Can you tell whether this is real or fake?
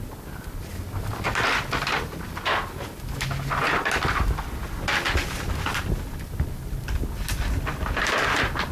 real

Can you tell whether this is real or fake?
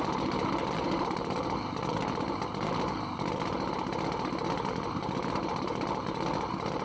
fake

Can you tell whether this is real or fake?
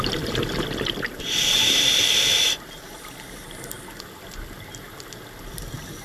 real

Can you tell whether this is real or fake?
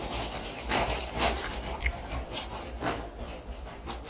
fake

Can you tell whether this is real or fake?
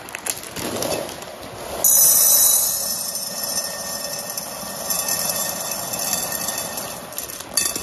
real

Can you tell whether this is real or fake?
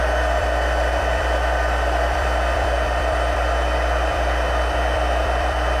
fake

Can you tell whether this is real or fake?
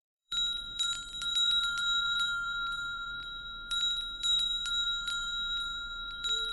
fake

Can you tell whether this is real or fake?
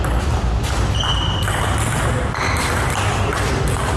real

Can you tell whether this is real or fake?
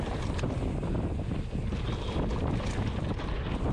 real